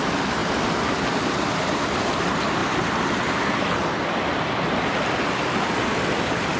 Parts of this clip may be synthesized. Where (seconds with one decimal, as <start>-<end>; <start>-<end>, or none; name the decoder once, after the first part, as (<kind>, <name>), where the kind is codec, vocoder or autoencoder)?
none